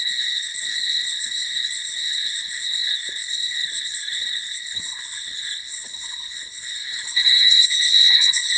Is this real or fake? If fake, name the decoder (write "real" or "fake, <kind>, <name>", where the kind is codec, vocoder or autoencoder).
fake, codec, HILCodec